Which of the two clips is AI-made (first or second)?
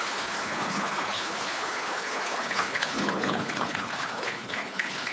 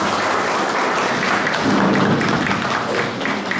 first